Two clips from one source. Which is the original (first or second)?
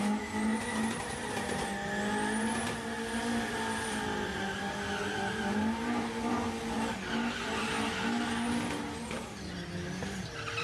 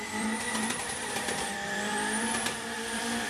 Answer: first